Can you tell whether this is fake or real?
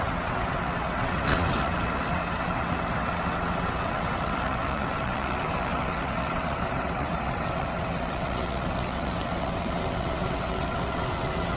fake